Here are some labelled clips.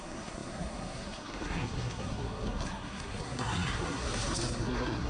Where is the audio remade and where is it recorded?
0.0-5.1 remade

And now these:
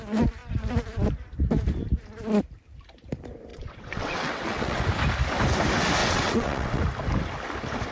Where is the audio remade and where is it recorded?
0.0-3.5 recorded; 3.5-4.8 remade; 4.8-6.0 recorded; 6.0-6.8 remade; 6.8-7.9 recorded